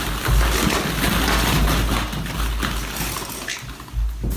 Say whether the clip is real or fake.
real